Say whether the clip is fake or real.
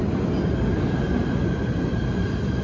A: real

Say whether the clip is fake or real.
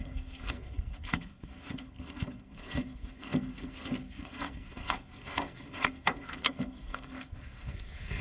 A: fake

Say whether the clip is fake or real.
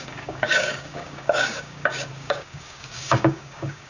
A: fake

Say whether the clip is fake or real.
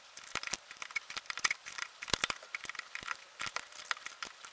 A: fake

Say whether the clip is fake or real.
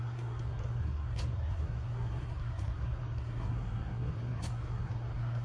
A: fake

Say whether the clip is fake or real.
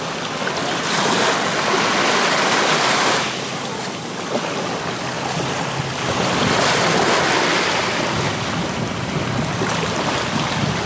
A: real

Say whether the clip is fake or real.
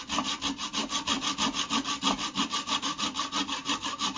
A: real